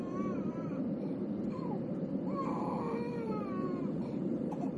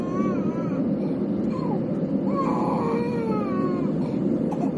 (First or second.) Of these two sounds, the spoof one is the first